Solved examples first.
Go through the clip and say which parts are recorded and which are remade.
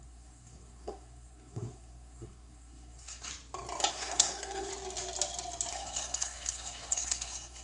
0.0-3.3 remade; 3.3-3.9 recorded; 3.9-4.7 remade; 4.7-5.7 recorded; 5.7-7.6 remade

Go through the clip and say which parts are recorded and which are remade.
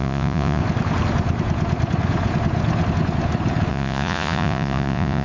0.0-0.6 remade; 0.6-3.7 recorded; 3.7-5.2 remade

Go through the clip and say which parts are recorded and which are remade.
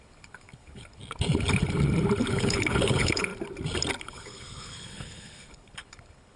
0.0-1.0 remade; 1.0-2.3 recorded; 2.3-3.3 remade; 3.3-4.0 recorded; 4.0-6.4 remade